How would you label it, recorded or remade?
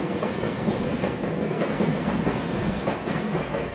remade